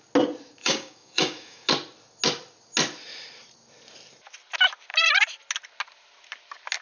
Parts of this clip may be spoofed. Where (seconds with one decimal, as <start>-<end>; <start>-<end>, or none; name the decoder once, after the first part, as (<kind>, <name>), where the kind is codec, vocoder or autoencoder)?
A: 0.6-1.7 (codec, DAC)